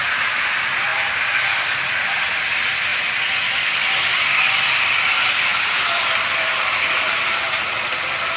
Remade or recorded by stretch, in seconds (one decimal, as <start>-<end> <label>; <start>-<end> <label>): 0.0-8.4 recorded